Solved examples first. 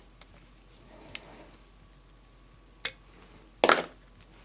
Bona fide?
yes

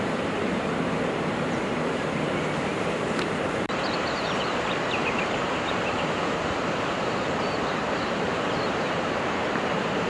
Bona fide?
no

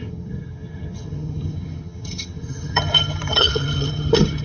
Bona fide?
no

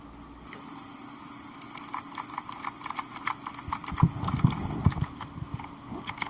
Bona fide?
yes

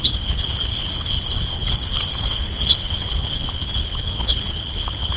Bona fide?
no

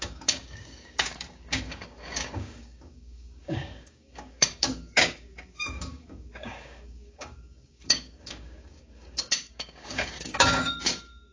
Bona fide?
no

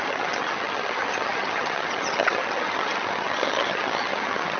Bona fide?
no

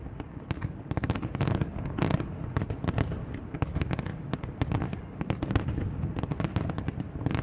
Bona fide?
yes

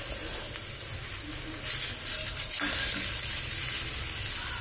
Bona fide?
yes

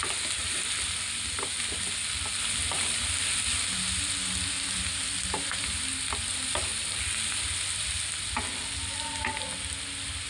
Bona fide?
yes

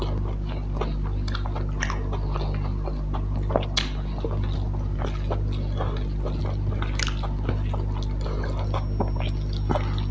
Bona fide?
yes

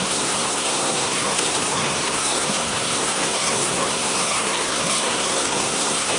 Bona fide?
no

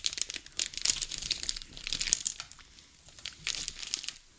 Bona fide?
yes